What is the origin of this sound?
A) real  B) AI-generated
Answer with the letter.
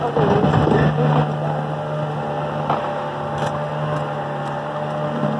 A